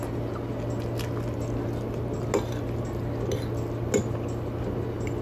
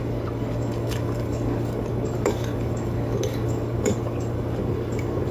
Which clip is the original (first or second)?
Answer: first